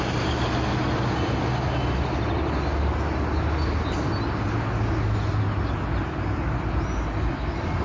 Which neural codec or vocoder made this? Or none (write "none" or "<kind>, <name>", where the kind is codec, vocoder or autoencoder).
none